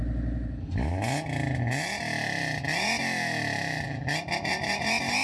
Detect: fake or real real